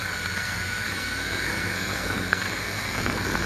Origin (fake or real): fake